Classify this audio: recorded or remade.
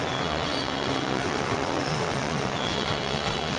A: remade